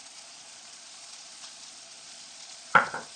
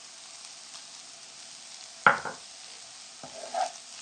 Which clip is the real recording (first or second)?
second